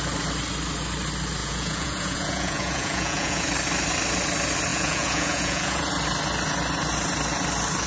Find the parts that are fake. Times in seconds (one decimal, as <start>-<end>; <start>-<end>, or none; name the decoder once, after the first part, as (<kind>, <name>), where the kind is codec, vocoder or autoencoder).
1.4-3.5 (vocoder, Vocos); 4.7-5.9